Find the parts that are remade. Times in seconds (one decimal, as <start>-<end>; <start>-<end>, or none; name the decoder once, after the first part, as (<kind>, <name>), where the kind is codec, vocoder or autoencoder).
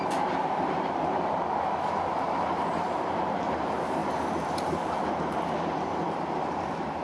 0.0-7.0 (vocoder, BigVGAN v2)